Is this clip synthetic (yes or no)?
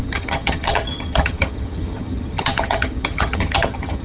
yes